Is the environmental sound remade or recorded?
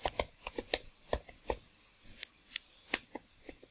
recorded